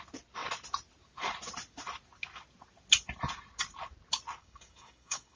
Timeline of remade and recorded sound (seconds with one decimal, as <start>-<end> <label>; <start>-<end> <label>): 0.0-4.4 recorded; 4.4-5.4 remade

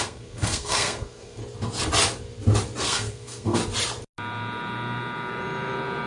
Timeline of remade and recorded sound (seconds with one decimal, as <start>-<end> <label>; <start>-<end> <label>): 0.0-1.4 remade; 1.4-2.8 recorded; 2.8-3.6 remade; 3.6-6.1 recorded

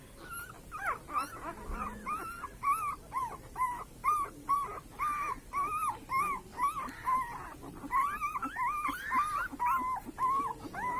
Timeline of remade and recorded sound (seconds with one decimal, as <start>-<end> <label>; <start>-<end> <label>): 0.0-11.0 remade

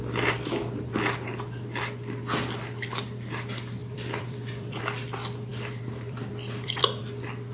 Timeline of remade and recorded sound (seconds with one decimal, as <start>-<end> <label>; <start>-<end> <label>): 0.0-3.8 recorded; 3.8-4.8 remade; 4.8-5.5 recorded; 5.5-7.0 remade; 7.0-7.5 recorded